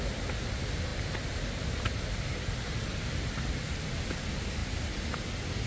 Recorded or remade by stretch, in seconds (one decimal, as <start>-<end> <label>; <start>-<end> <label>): 0.0-5.7 recorded